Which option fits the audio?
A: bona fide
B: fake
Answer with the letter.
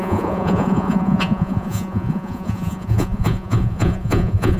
B